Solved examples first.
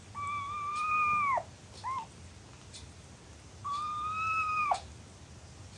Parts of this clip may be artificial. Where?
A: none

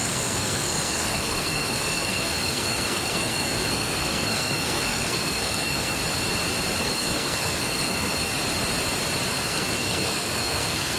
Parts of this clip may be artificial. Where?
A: 0.0-6.0; 6.8-8.3; 9.3-11.0

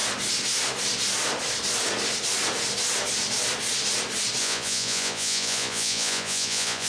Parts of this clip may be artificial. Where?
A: 4.4-6.9

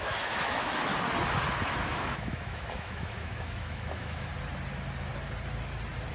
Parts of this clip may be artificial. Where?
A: 0.0-0.9; 1.7-4.3

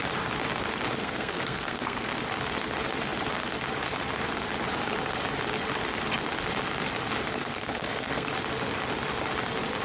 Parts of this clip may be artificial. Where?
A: 1.0-2.1; 7.3-8.3

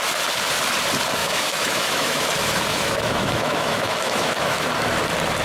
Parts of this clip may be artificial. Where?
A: 1.2-2.2; 2.7-4.7

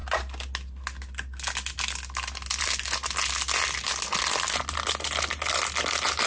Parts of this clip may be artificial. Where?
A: none